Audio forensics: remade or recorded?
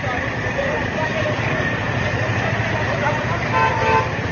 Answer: recorded